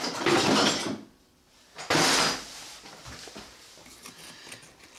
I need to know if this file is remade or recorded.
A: recorded